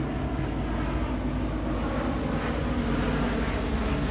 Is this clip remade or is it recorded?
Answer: recorded